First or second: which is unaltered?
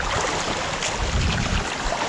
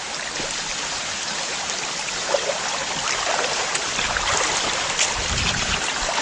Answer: first